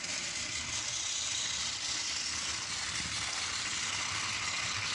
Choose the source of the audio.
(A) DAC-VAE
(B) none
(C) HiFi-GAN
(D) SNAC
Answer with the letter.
B